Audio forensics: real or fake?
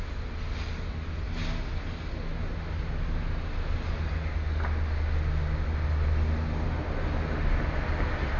real